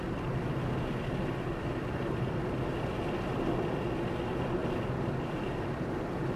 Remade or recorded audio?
recorded